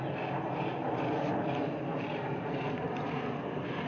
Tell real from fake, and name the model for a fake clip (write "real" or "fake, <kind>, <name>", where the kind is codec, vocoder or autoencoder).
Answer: real